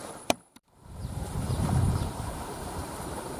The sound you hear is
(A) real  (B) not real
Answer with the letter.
B